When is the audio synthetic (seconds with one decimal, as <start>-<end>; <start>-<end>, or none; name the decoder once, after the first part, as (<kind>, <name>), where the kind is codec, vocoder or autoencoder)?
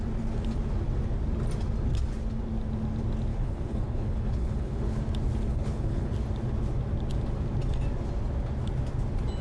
3.3-5.0 (codec, HILCodec); 5.5-6.1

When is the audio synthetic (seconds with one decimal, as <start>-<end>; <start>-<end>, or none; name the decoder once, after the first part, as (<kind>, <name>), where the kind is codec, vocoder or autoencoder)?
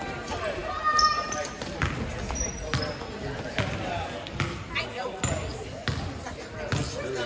none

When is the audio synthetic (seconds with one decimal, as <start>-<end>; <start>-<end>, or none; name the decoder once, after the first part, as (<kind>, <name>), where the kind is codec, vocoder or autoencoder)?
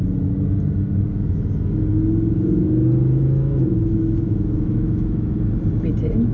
3.2-5.5 (autoencoder, DAC-VAE)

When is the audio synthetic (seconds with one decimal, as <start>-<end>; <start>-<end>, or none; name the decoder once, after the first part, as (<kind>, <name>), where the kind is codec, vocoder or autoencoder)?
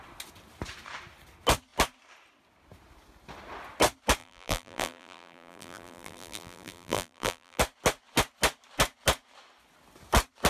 4.2-7.6 (vocoder, BigVGAN v2)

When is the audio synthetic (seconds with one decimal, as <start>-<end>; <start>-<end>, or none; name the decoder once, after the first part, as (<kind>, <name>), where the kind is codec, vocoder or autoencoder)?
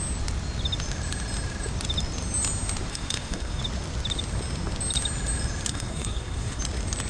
2.9-3.6 (codec, SNAC); 5.7-6.6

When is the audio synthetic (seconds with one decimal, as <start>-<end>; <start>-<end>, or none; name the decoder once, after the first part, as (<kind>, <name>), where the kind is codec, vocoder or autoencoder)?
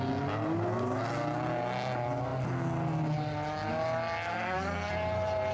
4.3-4.9 (codec, SNAC)